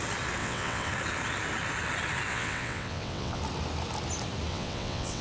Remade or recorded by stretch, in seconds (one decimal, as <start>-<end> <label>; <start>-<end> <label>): 0.0-0.4 recorded; 0.4-0.9 remade; 0.9-2.3 recorded; 2.3-3.4 remade; 3.4-4.5 recorded; 4.5-5.2 remade